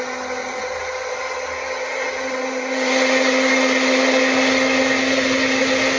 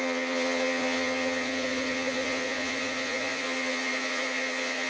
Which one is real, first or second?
first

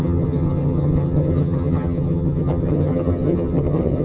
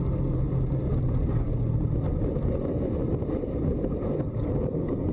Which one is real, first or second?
second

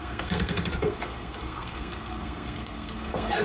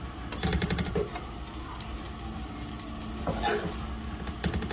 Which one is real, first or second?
second